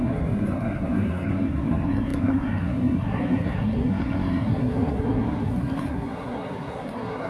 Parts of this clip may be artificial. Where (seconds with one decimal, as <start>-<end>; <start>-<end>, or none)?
0.0-7.3